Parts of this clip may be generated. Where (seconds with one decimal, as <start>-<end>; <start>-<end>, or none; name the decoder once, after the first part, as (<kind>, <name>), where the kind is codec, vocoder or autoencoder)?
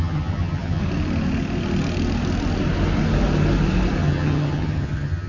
0.0-0.8 (vocoder, HiFi-GAN); 4.0-5.3